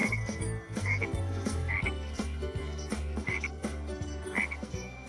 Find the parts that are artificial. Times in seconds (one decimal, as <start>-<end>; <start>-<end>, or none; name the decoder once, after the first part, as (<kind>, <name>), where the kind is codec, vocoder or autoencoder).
0.0-5.1 (codec, SNAC)